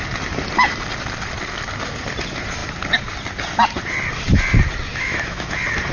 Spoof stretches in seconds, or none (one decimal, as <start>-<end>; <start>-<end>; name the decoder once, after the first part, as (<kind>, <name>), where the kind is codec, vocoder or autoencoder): 4.9-5.5 (autoencoder, DAC-VAE)